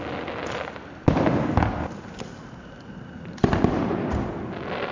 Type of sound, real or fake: real